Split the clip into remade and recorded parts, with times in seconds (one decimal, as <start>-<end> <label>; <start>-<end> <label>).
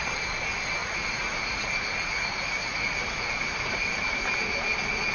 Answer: 0.0-0.8 recorded; 0.8-3.9 remade; 3.9-5.1 recorded